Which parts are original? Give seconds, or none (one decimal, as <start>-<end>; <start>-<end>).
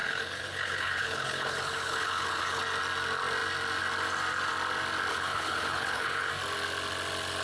2.6-5.1; 6.3-7.4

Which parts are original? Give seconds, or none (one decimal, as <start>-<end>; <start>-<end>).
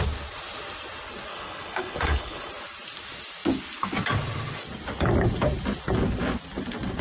0.0-1.3; 2.5-7.0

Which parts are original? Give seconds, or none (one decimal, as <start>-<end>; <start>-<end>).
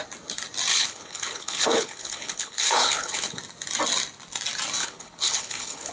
0.0-0.7; 3.4-4.8